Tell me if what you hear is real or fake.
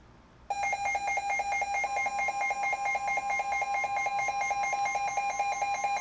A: real